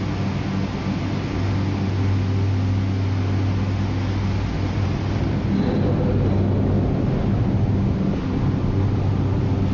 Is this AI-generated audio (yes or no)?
no